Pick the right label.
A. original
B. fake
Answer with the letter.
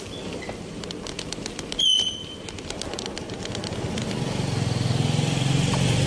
A